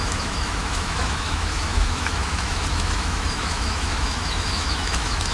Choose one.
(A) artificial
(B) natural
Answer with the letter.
A